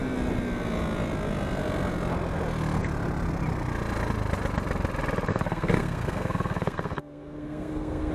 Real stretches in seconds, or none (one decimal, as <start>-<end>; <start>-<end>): 0.0-5.3